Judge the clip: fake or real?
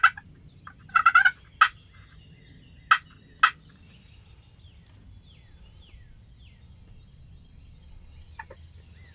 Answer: real